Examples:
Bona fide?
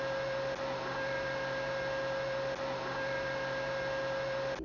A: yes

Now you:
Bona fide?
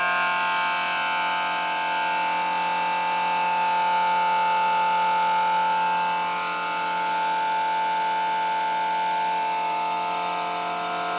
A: yes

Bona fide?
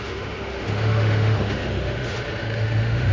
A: no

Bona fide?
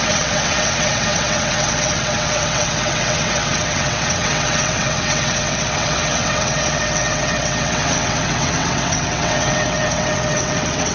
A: no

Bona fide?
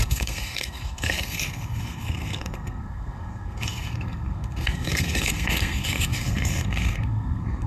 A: no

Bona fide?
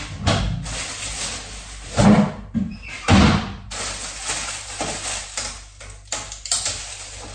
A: yes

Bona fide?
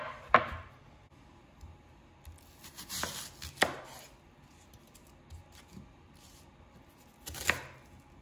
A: yes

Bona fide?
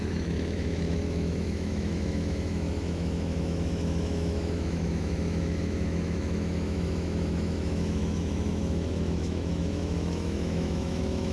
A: no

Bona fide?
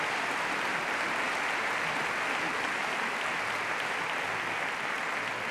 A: yes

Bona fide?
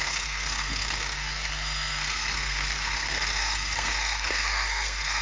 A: no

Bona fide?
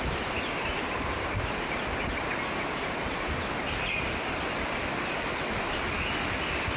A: yes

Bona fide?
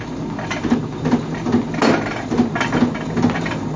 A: yes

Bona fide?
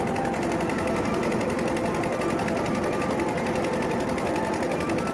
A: no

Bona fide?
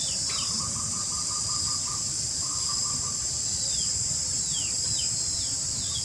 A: no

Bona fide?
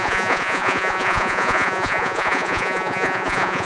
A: no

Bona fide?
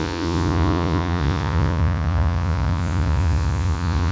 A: no